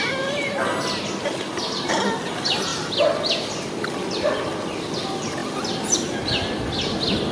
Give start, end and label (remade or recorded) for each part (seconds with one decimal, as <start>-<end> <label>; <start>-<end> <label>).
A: 0.0-7.3 recorded